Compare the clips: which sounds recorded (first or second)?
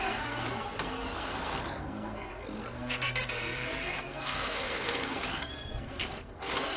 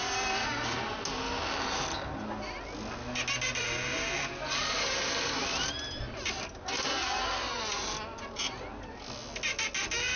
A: second